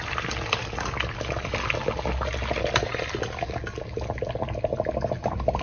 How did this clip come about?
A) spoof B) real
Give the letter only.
B